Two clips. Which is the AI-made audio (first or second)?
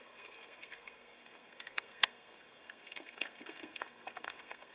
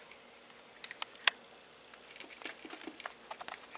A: first